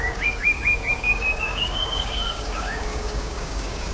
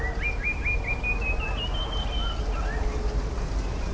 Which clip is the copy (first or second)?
first